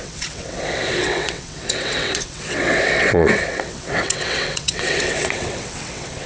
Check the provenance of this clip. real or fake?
fake